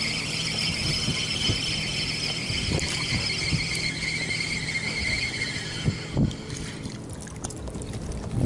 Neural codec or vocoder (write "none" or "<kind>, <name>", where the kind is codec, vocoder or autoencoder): none